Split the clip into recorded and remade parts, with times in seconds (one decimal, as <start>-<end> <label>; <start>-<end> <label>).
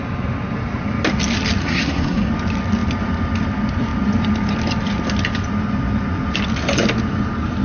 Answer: 0.0-1.6 recorded; 1.6-2.3 remade; 2.3-7.6 recorded